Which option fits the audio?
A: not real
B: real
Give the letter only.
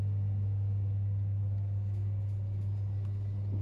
B